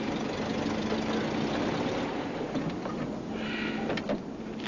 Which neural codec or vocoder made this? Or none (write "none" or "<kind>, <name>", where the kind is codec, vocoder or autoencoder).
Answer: none